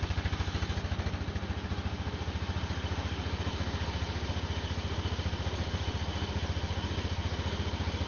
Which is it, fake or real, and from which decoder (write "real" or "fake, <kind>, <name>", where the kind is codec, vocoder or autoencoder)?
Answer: real